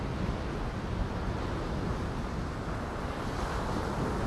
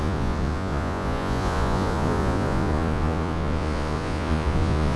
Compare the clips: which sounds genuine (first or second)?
first